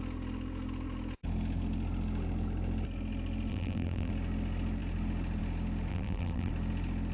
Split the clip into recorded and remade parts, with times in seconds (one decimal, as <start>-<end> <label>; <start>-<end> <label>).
0.0-3.5 recorded; 3.5-4.1 remade; 4.1-5.9 recorded; 5.9-6.5 remade; 6.5-7.1 recorded